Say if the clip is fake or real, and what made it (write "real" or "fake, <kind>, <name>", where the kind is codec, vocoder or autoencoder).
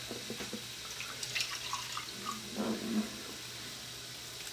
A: real